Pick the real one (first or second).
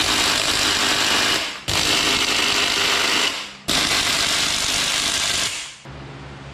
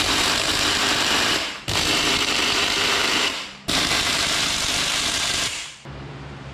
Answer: first